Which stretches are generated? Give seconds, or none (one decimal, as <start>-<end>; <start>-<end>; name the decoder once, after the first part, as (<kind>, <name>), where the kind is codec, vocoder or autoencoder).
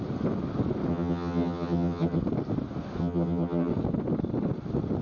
0.9-2.2 (vocoder, HiFi-GAN); 3.0-3.7